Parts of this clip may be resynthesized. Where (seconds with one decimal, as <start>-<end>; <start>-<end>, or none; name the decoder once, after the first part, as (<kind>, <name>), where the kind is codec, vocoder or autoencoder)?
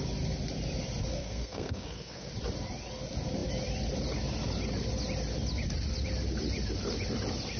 1.2-2.3 (codec, SNAC)